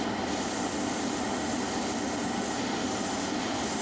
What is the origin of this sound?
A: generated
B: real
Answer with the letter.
B